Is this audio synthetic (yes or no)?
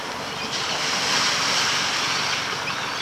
no